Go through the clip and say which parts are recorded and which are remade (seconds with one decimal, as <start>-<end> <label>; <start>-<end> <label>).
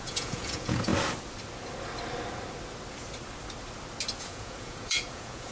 0.0-0.9 remade; 0.9-4.2 recorded; 4.2-5.5 remade